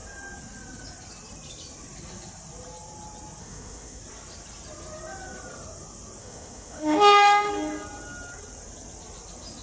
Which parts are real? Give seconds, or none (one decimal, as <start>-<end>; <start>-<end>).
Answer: 0.0-3.4; 4.0-6.2; 7.5-9.6

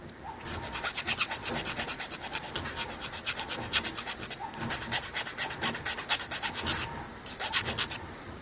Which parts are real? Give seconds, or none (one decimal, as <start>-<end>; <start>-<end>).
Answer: 0.0-8.4

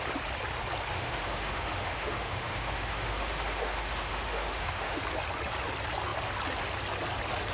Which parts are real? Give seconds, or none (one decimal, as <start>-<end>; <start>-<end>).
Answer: 0.0-0.9; 5.0-7.5

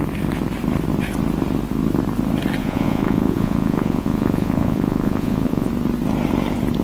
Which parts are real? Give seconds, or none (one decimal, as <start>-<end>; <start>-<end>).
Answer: 0.0-2.6; 5.7-6.8

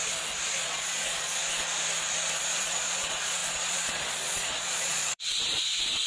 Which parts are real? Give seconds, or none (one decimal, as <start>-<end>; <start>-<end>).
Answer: 0.0-0.6; 1.4-2.4

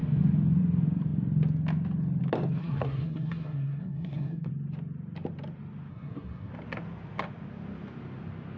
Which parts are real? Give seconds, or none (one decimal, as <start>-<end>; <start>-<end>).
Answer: 0.0-2.6; 4.5-5.9; 6.5-8.6

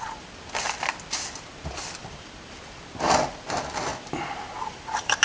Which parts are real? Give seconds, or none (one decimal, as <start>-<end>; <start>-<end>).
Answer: 0.0-2.0; 2.6-3.9

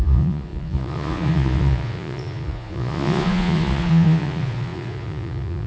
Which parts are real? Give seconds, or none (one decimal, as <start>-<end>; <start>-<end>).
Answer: none